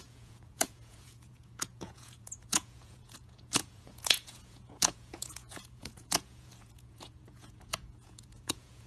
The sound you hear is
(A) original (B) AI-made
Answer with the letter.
B